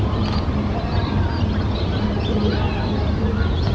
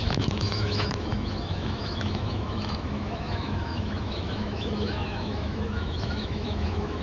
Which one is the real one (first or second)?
first